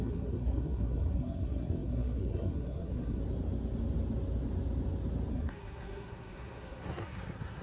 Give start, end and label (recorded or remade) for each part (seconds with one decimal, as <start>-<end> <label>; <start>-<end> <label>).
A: 0.0-3.2 remade; 3.2-5.3 recorded; 5.3-7.6 remade